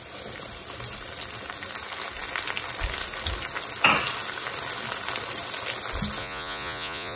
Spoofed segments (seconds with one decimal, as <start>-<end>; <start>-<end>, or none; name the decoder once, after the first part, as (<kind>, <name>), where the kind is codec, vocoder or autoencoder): 6.2-7.2 (vocoder, Vocos)